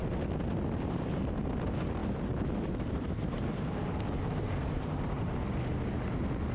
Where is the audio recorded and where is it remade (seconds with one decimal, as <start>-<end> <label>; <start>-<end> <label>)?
0.0-2.0 recorded; 2.0-5.3 remade; 5.3-6.5 recorded